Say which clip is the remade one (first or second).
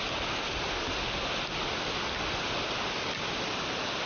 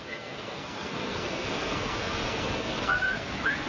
second